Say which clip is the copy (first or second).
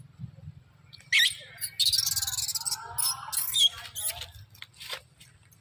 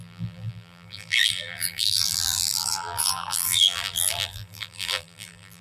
second